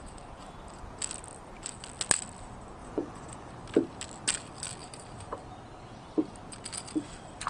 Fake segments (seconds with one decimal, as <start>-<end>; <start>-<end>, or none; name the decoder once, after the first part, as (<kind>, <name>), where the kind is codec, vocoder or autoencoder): 2.8-3.5 (vocoder, Vocos)